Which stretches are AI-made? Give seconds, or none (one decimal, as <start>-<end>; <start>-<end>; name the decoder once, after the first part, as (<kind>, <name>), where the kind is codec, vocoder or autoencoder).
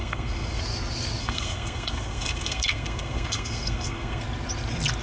0.0-0.6 (codec, SNAC); 1.2-4.2